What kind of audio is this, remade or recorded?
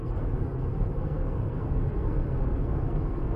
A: remade